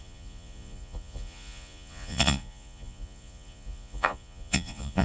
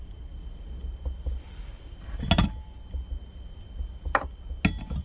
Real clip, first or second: second